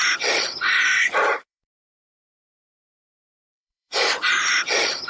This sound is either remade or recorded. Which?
remade